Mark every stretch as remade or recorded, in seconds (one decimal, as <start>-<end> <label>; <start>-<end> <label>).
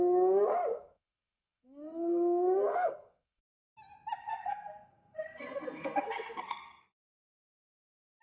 0.0-0.7 recorded; 0.7-3.6 remade; 3.6-4.2 recorded; 4.2-7.0 remade; 7.0-8.2 recorded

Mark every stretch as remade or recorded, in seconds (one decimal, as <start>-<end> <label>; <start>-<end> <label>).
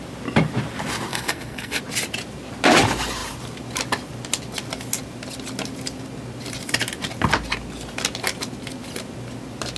0.0-1.1 recorded; 1.1-1.8 remade; 1.8-9.8 recorded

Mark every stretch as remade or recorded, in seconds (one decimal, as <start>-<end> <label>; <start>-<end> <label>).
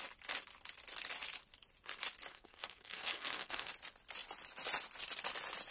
0.0-2.3 recorded; 2.3-3.7 remade; 3.7-5.7 recorded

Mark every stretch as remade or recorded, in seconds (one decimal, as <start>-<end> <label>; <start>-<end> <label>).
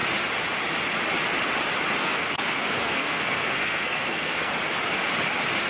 0.0-2.0 recorded; 2.0-4.5 remade; 4.5-5.7 recorded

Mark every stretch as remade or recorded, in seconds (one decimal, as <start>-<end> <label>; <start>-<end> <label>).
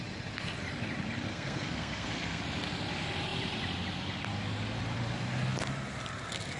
0.0-1.3 recorded; 1.3-2.4 remade; 2.4-6.6 recorded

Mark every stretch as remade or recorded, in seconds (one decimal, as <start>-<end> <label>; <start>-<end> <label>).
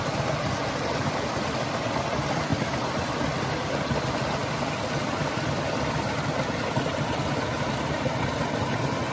0.0-9.1 recorded